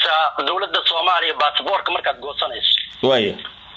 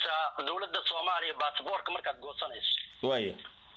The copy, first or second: first